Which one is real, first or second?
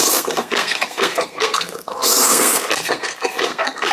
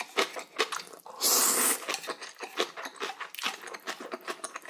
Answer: second